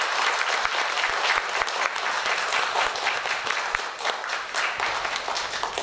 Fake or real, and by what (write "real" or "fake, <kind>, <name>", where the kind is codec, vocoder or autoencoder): real